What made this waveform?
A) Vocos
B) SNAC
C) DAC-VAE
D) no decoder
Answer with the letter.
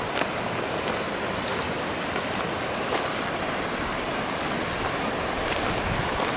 D